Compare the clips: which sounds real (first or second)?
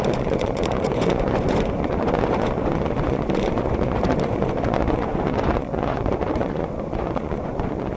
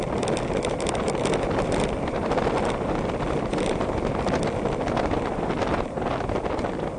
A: second